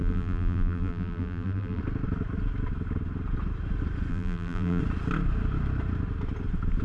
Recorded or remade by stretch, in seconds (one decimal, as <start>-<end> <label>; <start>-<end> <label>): 0.0-1.8 remade; 1.8-4.1 recorded; 4.1-4.8 remade; 4.8-6.8 recorded